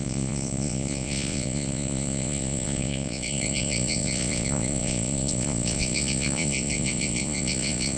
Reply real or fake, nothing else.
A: fake